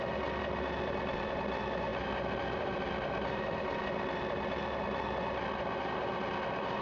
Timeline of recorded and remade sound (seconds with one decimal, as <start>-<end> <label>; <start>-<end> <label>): 0.0-1.9 recorded; 1.9-3.8 remade; 3.8-6.8 recorded